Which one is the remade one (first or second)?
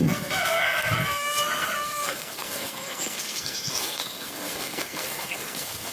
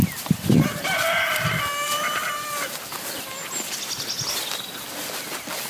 first